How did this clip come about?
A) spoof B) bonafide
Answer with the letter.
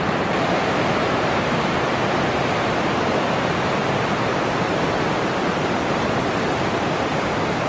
A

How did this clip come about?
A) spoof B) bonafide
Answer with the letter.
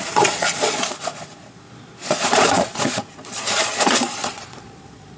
A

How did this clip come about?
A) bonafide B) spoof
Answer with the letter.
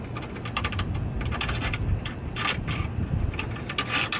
A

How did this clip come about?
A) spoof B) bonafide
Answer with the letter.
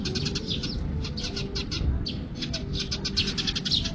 B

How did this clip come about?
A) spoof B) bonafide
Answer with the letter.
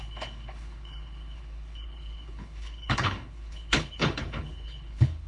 A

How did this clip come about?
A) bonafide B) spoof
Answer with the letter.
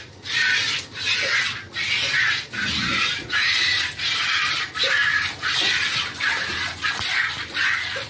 A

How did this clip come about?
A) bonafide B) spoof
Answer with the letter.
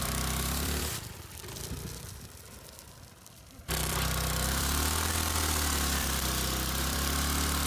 B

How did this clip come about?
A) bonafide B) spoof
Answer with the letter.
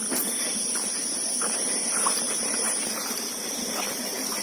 B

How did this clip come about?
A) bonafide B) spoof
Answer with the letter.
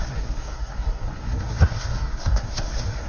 B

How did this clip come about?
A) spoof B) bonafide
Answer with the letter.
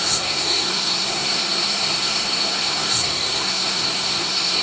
A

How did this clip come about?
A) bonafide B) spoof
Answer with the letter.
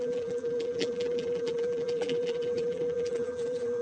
B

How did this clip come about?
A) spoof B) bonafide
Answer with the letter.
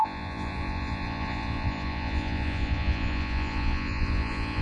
A